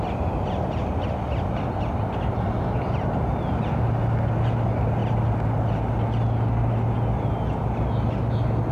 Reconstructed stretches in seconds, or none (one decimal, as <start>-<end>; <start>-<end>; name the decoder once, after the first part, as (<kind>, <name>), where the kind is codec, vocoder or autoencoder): none